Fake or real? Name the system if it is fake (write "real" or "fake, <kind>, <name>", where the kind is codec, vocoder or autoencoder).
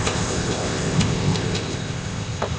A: fake, codec, ZipCodec